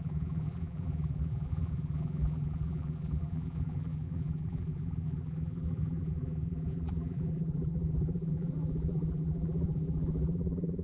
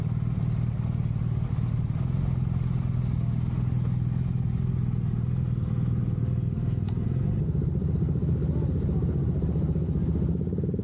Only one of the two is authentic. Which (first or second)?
second